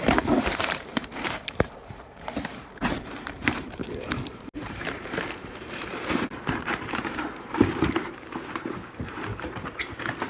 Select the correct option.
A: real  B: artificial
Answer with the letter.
B